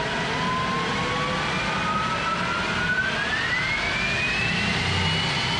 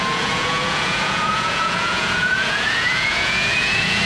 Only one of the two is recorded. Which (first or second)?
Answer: first